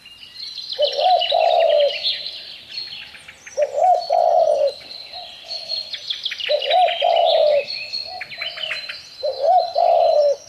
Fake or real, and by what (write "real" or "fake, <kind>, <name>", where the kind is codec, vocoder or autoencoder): real